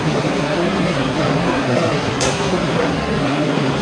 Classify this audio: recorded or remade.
remade